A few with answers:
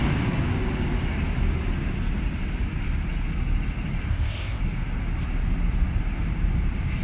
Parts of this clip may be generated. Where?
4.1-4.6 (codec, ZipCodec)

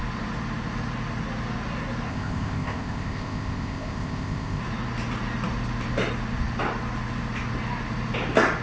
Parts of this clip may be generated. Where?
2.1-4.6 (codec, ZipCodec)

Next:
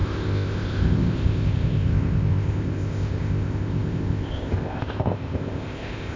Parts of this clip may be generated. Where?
0.0-6.2 (codec, ZipCodec)

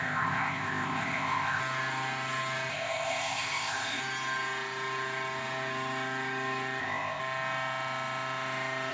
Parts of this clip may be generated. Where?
0.0-1.6 (codec, ZipCodec); 2.7-4.0; 6.8-7.2